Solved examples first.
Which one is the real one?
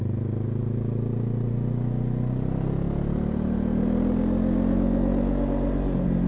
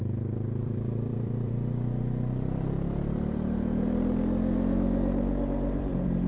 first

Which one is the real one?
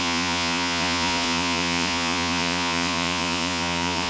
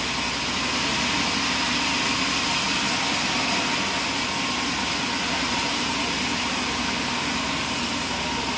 second